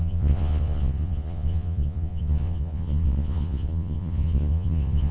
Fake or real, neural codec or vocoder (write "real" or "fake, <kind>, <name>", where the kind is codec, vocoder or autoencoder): fake, vocoder, Vocos